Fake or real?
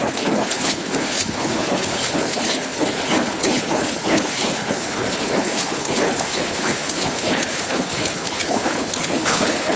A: fake